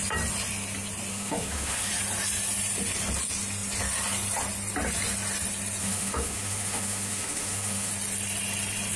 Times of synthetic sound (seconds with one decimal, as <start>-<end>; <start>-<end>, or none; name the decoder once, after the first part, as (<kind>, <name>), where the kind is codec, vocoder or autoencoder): 1.1-1.9 (autoencoder, DAC-VAE); 5.8-7.9

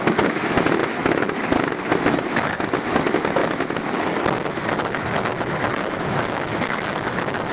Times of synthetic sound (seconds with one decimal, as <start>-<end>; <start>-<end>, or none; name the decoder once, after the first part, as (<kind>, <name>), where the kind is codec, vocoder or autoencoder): 0.0-7.5 (autoencoder, DAC-VAE)

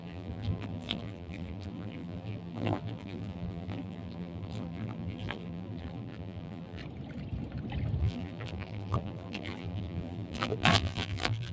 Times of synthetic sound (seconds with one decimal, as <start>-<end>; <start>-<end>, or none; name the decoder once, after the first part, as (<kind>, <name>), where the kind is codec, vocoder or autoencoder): 0.0-6.8 (vocoder, BigVGAN v2); 8.0-11.5

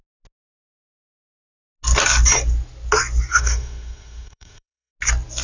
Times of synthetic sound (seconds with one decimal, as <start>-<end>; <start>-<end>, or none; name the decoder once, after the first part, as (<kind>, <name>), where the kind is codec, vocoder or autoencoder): 3.3-4.9 (codec, SNAC)

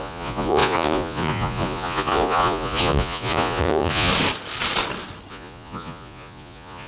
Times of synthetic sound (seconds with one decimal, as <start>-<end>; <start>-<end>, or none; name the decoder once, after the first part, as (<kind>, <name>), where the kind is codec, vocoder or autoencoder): 0.0-4.1 (vocoder, Vocos); 5.3-6.9

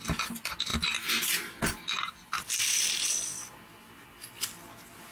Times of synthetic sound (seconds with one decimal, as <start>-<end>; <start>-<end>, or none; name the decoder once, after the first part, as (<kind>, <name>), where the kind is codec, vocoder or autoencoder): 0.7-3.8 (vocoder, BigVGAN v2)

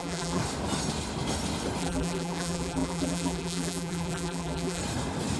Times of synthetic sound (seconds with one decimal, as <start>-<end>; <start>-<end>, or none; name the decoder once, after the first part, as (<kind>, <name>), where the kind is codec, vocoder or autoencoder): 0.0-0.4 (vocoder, BigVGAN v2); 1.8-4.8